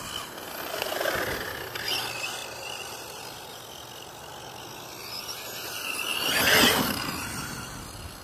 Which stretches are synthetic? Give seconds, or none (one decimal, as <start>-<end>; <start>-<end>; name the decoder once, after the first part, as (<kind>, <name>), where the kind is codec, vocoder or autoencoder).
none